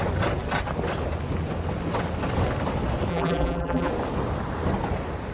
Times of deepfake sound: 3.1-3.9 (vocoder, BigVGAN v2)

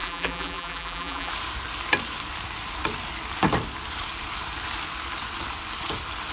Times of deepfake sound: 0.0-1.3 (vocoder, BigVGAN v2)

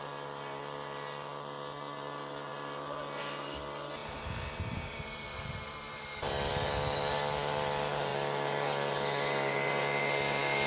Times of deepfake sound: 4.0-6.3 (vocoder, BigVGAN v2)

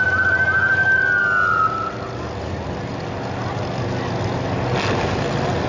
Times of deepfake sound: 1.2-2.4 (vocoder, BigVGAN v2)

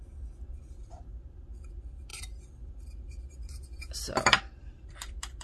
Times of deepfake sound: 0.0-1.1 (vocoder, BigVGAN v2); 1.7-5.4

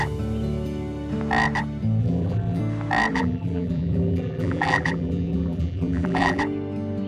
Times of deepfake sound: 2.0-2.6 (vocoder, BigVGAN v2); 3.1-6.4